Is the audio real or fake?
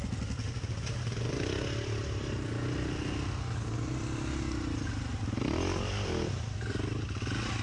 real